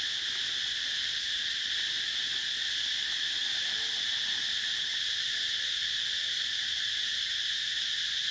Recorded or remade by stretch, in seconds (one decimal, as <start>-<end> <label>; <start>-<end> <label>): 0.0-8.3 recorded